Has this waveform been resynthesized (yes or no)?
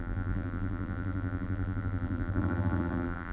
yes